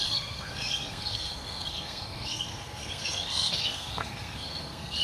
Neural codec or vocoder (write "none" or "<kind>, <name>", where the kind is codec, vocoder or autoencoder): codec, SNAC